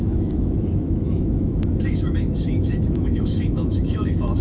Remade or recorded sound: remade